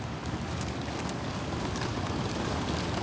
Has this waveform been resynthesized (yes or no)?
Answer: yes